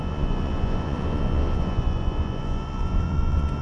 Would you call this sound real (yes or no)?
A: no